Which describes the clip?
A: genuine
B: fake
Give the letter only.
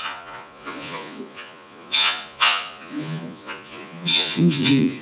B